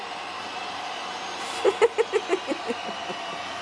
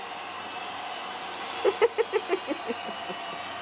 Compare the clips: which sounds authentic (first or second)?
second